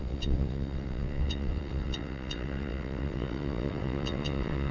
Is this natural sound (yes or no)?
no